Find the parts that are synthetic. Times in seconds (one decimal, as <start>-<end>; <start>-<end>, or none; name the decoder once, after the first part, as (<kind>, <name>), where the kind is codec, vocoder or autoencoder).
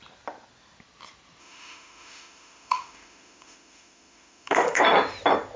1.4-4.8 (autoencoder, DAC-VAE)